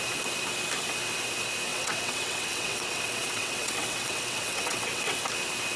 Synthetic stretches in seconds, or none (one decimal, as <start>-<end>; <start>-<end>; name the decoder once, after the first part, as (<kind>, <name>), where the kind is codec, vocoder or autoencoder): 1.7-5.2 (vocoder, WaveNeXt)